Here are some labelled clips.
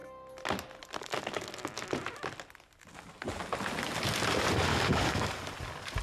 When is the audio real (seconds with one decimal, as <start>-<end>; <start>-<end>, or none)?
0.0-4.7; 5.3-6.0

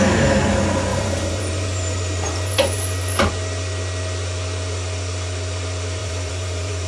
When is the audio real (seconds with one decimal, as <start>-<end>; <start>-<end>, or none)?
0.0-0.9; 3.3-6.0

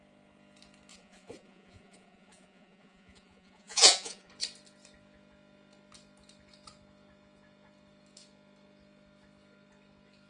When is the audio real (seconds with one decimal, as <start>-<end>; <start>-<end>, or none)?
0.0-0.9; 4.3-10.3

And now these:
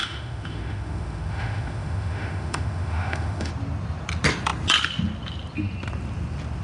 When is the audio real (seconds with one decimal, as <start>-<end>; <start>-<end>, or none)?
3.5-6.6

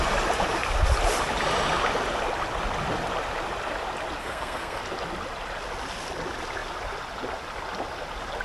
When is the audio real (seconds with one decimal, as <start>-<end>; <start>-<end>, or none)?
0.0-4.2; 4.8-8.4